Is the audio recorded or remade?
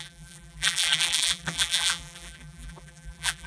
remade